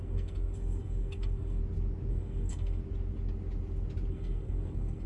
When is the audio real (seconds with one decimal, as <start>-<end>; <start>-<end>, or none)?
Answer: 1.6-2.1; 2.8-4.1